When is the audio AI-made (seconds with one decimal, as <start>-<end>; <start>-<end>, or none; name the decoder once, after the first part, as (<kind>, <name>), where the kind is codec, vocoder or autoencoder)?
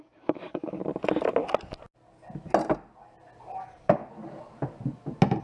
0.0-0.8 (codec, DAC); 3.6-4.0